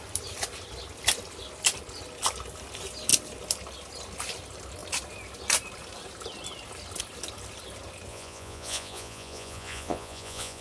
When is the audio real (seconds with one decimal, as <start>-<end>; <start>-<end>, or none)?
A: 0.0-8.1